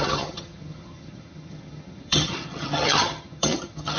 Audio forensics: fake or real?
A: fake